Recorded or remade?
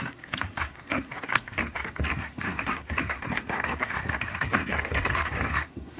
remade